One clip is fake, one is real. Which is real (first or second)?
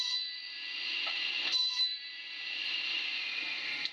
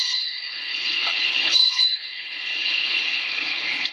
first